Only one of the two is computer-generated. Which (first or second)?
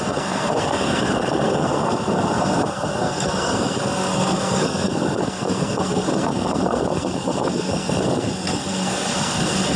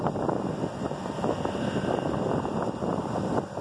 first